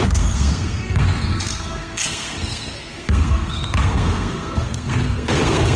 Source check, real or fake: fake